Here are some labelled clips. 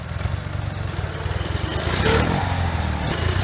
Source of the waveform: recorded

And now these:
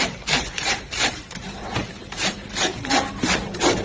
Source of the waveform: remade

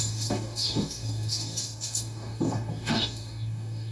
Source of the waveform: remade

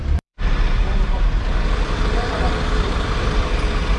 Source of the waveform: remade